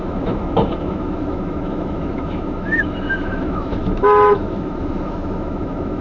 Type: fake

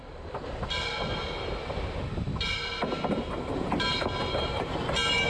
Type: real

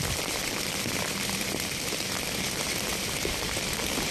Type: real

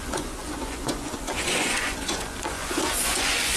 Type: fake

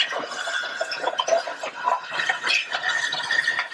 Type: real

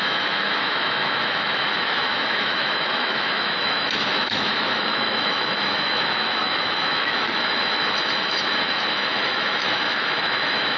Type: fake